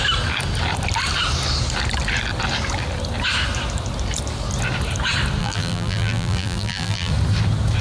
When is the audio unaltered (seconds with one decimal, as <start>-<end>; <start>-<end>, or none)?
0.0-5.4; 7.1-7.8